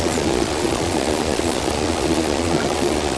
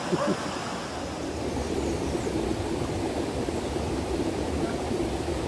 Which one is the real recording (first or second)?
second